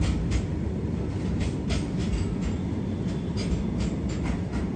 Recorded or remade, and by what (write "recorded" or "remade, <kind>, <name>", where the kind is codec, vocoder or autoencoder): recorded